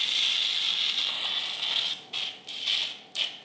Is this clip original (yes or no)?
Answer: yes